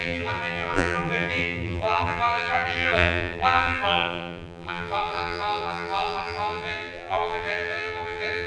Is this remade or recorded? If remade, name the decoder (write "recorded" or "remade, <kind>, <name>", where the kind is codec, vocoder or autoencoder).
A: remade, vocoder, BigVGAN v2